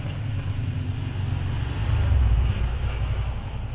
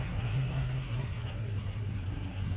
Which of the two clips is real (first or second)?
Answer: first